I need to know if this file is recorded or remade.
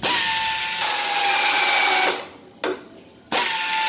recorded